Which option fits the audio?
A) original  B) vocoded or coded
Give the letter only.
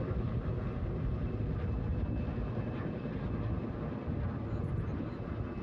A